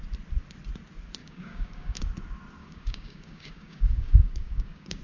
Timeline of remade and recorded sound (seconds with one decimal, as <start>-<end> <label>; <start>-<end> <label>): 0.0-1.2 recorded; 1.2-2.0 remade; 2.0-2.6 recorded; 2.6-5.0 remade